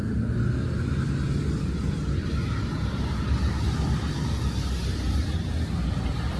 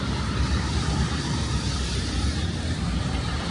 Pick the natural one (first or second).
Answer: first